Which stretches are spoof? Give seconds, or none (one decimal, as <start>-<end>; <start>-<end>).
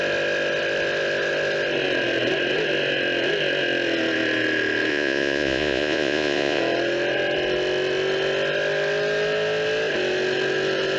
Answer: 4.9-6.6